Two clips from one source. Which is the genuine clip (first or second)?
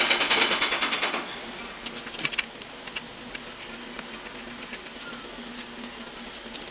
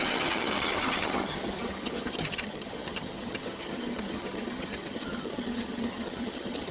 first